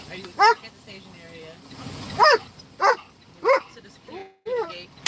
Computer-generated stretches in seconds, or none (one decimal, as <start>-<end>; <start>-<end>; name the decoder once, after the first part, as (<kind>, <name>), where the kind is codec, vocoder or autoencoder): none